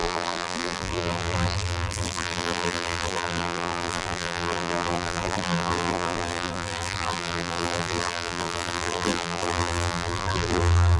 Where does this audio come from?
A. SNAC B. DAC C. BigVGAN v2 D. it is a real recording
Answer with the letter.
C